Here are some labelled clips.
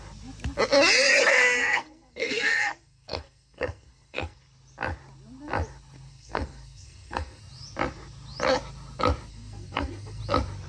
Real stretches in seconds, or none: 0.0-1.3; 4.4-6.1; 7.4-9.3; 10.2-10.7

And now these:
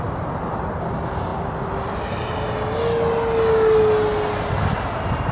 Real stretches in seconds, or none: 0.0-5.3

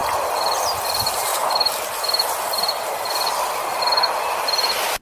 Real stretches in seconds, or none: 0.0-5.0